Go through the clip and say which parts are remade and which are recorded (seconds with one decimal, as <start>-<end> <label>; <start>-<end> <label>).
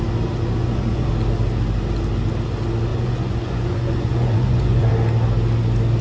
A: 0.0-0.6 recorded; 0.6-1.1 remade; 1.1-2.9 recorded; 2.9-4.9 remade; 4.9-6.0 recorded